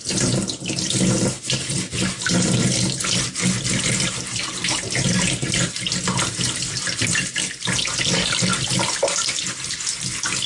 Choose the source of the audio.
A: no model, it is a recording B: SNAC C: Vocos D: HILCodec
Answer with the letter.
A